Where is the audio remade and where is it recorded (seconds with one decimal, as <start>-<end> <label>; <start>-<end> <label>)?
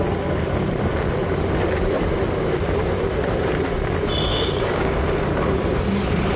0.0-4.3 recorded; 4.3-4.9 remade; 4.9-6.4 recorded